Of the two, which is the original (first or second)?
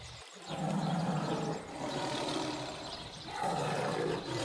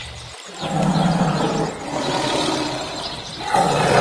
second